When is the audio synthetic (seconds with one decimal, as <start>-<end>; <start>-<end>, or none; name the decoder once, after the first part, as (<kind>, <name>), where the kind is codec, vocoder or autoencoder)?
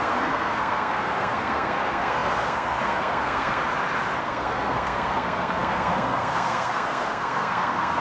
0.0-3.6 (codec, SNAC); 4.2-8.0